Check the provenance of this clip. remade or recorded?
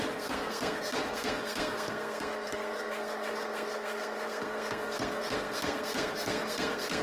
remade